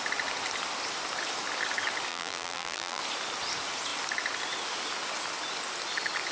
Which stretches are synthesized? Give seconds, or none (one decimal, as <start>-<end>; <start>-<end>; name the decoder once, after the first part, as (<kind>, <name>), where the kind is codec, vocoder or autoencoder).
2.1-3.0 (vocoder, BigVGAN v2)

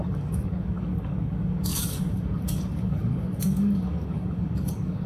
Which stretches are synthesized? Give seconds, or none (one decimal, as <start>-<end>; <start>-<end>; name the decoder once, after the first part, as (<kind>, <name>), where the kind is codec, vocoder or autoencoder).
0.0-5.1 (codec, DAC)

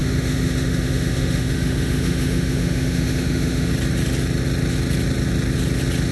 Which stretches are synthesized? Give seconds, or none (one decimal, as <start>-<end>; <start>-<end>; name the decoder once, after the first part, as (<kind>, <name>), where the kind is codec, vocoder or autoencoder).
0.0-3.7 (autoencoder, DAC-VAE)

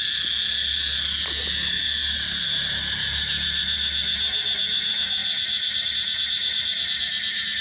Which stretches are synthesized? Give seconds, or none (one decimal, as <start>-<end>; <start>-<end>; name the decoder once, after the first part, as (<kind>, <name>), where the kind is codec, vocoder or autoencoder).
5.2-5.9 (vocoder, BigVGAN v2)

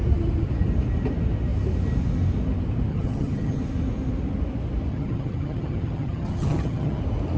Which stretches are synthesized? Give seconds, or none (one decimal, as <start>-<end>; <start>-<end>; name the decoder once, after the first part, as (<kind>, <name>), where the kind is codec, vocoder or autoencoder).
2.9-3.6 (vocoder, HiFi-GAN); 4.9-7.0

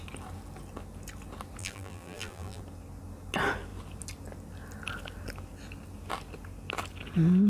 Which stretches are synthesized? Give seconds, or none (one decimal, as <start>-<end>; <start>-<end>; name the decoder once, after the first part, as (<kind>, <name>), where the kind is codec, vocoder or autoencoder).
1.6-2.6 (vocoder, BigVGAN v2)

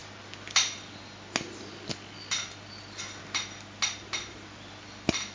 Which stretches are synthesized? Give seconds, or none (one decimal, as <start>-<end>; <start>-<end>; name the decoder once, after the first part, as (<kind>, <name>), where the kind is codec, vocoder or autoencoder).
none

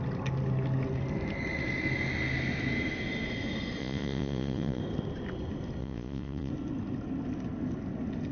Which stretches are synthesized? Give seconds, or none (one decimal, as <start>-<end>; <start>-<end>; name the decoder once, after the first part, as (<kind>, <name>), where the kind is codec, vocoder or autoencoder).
3.8-4.8 (vocoder, Vocos); 5.8-6.5